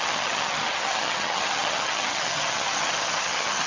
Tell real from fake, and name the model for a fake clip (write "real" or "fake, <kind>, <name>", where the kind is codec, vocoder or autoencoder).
fake, vocoder, HiFi-GAN